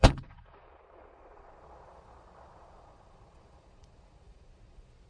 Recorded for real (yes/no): no